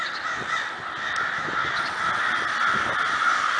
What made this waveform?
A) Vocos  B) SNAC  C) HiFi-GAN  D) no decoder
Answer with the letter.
D